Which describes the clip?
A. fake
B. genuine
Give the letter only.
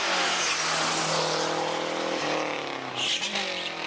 B